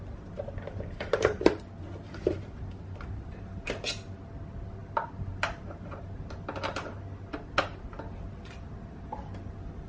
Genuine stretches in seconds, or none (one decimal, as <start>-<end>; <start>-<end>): 0.0-9.9